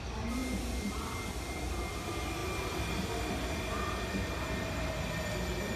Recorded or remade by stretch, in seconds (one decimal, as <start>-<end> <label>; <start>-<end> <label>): 0.0-5.8 recorded